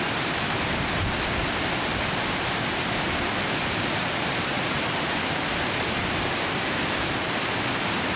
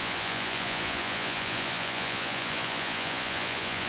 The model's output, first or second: second